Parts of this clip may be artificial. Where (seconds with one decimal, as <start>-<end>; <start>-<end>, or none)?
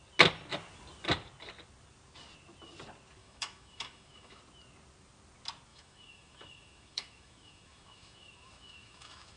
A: 3.2-4.4; 5.7-9.4